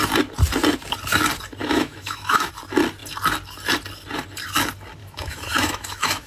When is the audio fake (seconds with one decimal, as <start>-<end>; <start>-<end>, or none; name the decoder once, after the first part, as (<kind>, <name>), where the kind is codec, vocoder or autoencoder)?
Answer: 1.6-2.5 (autoencoder, DAC-VAE); 5.0-6.3